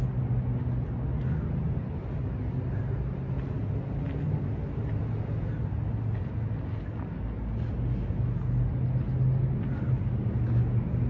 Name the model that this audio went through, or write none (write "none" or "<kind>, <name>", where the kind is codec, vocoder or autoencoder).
none